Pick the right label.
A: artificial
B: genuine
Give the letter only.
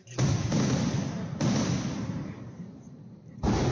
B